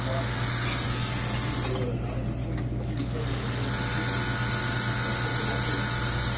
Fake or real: real